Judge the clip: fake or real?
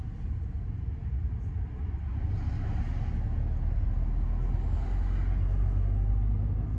real